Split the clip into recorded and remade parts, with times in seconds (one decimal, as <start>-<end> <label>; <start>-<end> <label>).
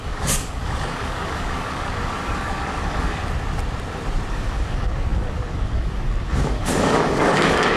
0.0-3.2 remade; 3.2-4.3 recorded; 4.3-7.8 remade